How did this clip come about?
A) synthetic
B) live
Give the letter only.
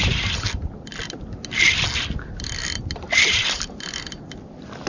B